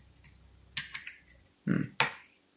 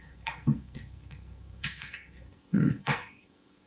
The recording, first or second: first